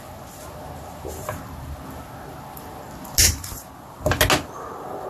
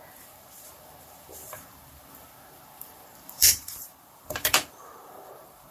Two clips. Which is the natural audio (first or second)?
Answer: first